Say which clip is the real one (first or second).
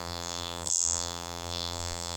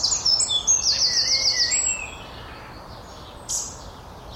second